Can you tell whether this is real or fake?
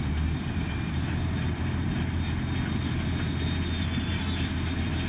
real